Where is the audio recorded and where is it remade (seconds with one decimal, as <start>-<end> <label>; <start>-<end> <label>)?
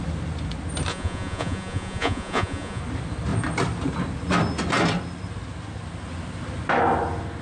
0.0-0.9 recorded; 0.9-2.8 remade; 2.8-7.4 recorded